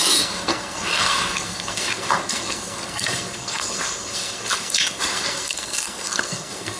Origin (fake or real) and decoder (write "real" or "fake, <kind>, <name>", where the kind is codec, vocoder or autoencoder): fake, codec, SNAC